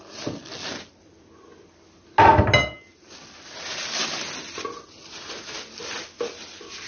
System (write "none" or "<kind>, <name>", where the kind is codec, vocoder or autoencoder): none